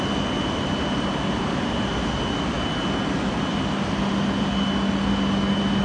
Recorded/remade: recorded